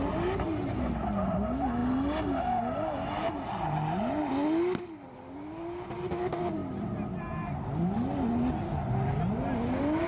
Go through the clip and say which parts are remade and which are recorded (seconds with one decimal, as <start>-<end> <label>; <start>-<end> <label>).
0.0-10.1 recorded